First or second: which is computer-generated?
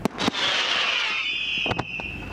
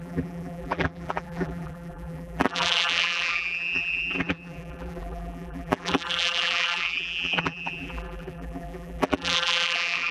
second